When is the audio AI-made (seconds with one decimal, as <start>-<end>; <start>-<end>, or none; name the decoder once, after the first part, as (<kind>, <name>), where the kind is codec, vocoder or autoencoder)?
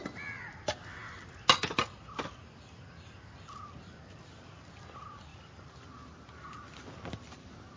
none